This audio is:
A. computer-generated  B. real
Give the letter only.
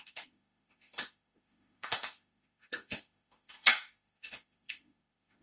A